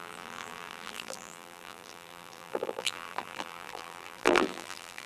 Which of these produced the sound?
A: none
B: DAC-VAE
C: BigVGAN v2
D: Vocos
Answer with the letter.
C